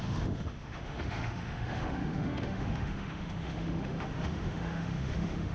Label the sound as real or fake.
fake